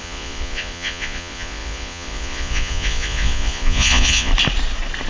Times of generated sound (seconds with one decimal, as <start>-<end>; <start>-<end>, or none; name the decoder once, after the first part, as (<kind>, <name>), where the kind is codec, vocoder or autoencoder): 0.0-4.3 (vocoder, Vocos)